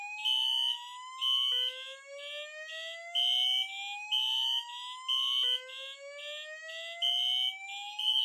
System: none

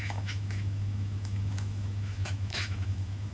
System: autoencoder, DAC-VAE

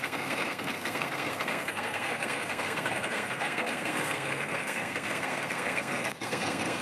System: codec, SNAC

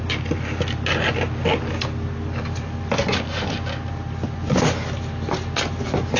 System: none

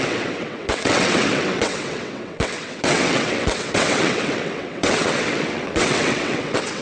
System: vocoder, WaveNeXt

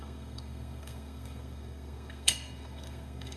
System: codec, SNAC